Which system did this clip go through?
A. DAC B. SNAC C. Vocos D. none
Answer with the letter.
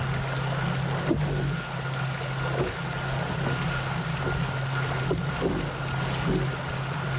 D